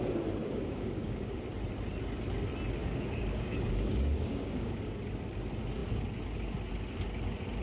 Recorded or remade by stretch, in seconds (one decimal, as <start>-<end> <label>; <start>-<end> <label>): 0.0-0.4 recorded; 0.4-1.4 remade; 1.4-2.8 recorded; 2.8-5.0 remade; 5.0-7.6 recorded